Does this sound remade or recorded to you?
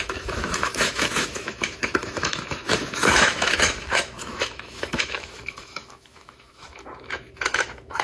remade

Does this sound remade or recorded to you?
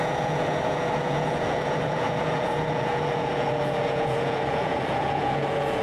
remade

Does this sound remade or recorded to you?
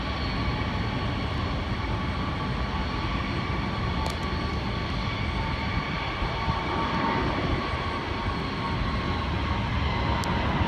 recorded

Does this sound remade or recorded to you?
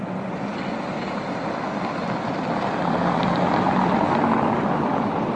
remade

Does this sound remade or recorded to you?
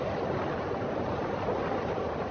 remade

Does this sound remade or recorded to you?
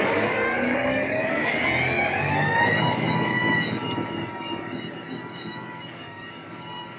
remade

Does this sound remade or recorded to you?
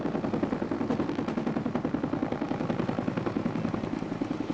recorded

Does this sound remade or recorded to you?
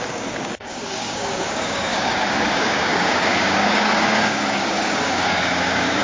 remade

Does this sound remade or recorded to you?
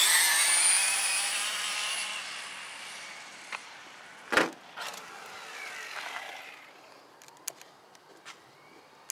recorded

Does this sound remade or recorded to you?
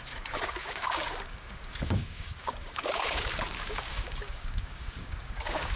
remade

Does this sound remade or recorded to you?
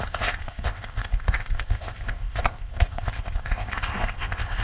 remade